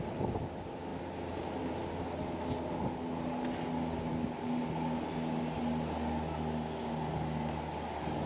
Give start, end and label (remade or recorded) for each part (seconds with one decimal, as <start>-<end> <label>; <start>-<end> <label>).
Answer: 0.0-8.3 recorded